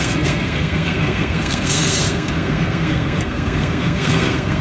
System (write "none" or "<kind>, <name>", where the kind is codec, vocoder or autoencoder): codec, SNAC